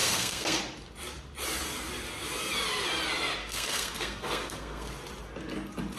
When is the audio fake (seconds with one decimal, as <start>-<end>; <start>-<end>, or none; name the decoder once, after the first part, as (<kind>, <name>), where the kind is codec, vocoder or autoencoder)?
0.0-0.6 (codec, SNAC); 3.4-4.9